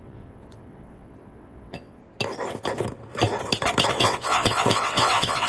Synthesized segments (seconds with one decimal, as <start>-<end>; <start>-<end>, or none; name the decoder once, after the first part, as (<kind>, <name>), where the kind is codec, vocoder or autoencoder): 0.0-2.0 (vocoder, WaveNeXt); 3.9-5.5